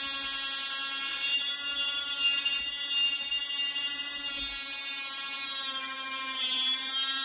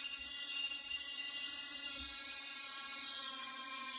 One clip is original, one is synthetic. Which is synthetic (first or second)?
second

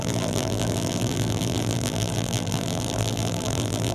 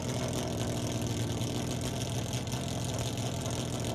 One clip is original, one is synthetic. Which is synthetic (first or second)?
first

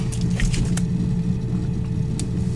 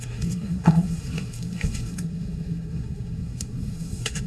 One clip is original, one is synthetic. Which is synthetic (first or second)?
second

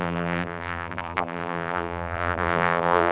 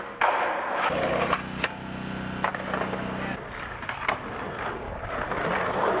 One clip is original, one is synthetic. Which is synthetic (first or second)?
first